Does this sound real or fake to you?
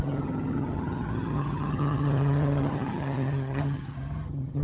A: fake